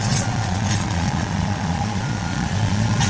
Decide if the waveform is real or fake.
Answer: fake